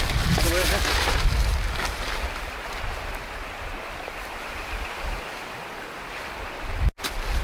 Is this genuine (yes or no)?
yes